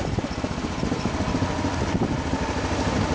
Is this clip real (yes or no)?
yes